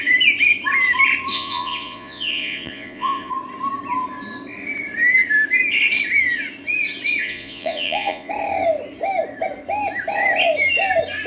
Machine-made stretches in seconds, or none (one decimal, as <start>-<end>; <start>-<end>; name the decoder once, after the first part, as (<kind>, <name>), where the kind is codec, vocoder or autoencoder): 1.3-3.3 (vocoder, Vocos); 7.2-8.3